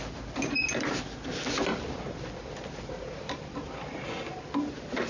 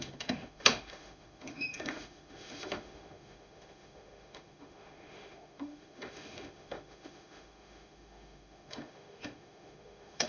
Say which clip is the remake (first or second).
second